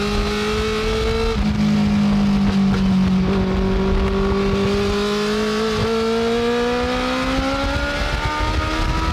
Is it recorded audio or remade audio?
recorded